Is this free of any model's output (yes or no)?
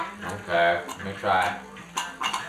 yes